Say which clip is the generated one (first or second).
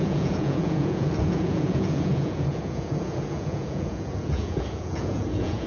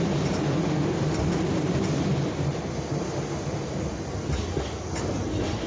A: first